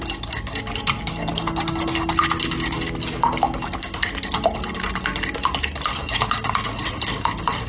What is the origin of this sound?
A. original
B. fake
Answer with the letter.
A